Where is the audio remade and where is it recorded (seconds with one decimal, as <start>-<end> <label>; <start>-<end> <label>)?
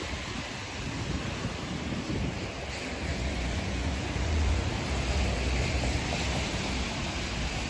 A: 0.0-3.1 recorded; 3.1-4.7 remade; 4.7-7.7 recorded